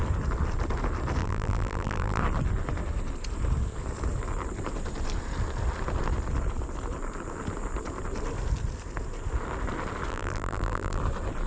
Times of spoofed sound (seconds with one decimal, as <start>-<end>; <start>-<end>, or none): 1.2-2.2; 10.1-11.0